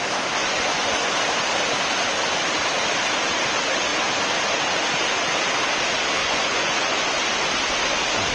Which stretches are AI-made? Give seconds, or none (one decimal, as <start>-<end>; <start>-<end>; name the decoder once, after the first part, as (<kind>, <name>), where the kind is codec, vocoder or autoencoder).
0.4-1.1 (vocoder, Vocos); 6.2-7.2